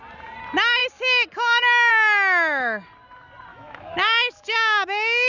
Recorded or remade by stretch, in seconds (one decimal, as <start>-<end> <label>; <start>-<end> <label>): 0.0-3.5 recorded; 3.5-5.3 remade